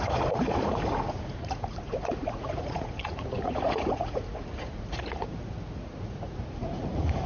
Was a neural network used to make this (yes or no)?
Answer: yes